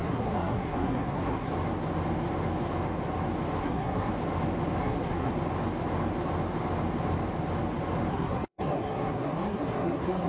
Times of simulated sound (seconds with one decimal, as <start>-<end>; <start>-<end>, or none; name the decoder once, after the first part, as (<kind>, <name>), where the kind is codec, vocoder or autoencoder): 0.0-1.5 (codec, SNAC); 3.6-4.1; 4.8-5.3; 8.1-10.3